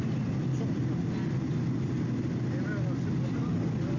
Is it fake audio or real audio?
real